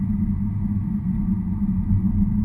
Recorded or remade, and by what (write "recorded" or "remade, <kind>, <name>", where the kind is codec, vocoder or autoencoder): recorded